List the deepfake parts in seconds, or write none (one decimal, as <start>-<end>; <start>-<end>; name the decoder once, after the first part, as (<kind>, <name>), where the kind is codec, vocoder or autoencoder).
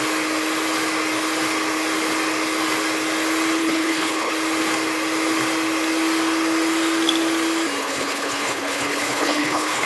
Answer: 3.6-4.3 (codec, HILCodec); 7.8-9.9